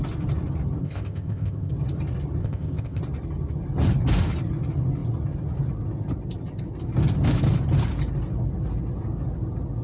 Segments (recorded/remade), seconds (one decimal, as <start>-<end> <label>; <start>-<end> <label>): 0.0-0.8 recorded; 0.8-1.7 remade; 1.7-2.4 recorded; 2.4-3.0 remade; 3.0-9.8 recorded